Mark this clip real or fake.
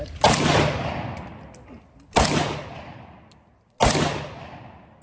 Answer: real